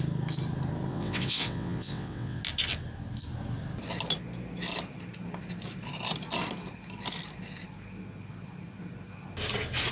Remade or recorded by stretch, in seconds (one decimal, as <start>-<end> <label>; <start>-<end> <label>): 0.0-0.9 recorded; 0.9-2.4 remade; 2.4-9.9 recorded